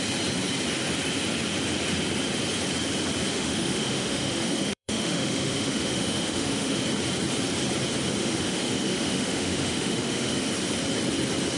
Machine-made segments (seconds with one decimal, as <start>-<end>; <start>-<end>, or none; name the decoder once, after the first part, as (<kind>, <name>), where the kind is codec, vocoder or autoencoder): 3.3-6.8 (autoencoder, DAC-VAE); 8.2-10.5